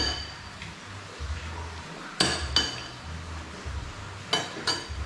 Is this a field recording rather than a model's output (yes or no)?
yes